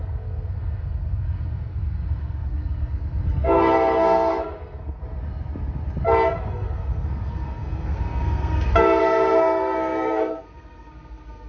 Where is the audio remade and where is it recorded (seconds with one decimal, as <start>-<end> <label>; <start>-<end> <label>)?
0.0-5.0 remade; 5.0-6.5 recorded; 6.5-11.5 remade